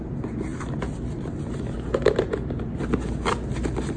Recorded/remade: recorded